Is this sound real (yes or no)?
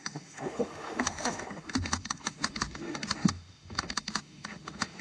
no